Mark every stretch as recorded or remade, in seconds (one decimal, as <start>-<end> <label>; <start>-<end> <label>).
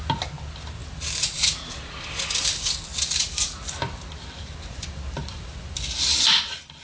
0.0-0.8 recorded; 0.8-2.1 remade; 2.1-6.8 recorded